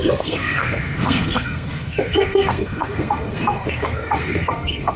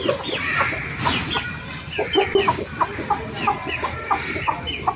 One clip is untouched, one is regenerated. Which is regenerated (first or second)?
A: first